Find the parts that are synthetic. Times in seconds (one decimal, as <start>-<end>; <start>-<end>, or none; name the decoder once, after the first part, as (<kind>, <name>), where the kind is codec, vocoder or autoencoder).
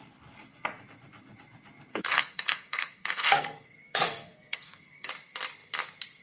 1.9-5.1 (codec, SNAC)